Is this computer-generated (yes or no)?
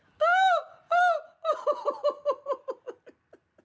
no